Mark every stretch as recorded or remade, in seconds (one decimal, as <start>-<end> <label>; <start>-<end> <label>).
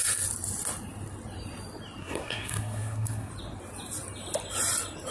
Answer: 0.0-2.0 recorded; 2.0-3.3 remade; 3.3-5.1 recorded